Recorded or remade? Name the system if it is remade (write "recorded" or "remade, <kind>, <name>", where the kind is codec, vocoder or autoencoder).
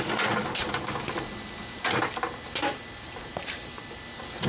recorded